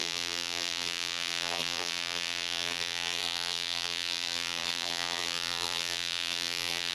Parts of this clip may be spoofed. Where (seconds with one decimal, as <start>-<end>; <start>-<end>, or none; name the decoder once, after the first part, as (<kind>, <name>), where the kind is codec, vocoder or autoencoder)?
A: 0.0-6.9 (vocoder, BigVGAN v2)